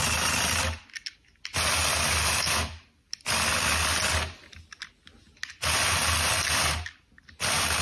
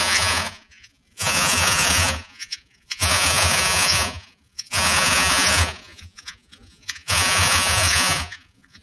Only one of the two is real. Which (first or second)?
first